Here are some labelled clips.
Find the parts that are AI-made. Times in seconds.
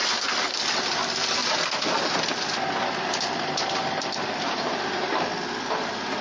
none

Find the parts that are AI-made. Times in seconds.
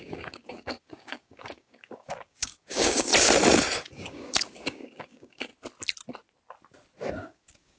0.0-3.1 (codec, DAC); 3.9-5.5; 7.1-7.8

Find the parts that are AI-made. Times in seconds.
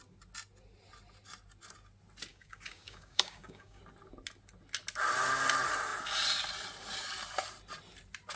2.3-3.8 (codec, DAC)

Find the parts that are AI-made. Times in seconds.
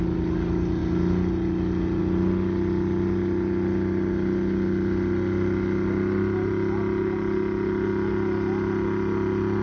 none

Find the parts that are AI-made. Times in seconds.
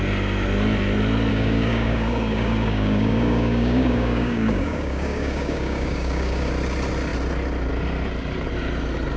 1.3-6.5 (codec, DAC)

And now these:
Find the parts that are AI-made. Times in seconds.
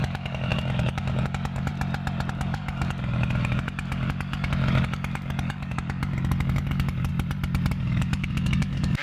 0.0-1.7 (codec, DAC); 2.3-7.1; 7.7-9.0